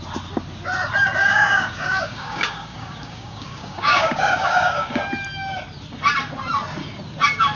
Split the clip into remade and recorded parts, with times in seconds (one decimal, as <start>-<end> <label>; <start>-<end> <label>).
0.0-1.2 recorded; 1.2-5.0 remade; 5.0-7.6 recorded